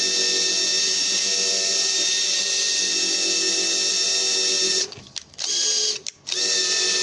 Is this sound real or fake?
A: real